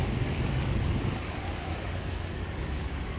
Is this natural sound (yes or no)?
no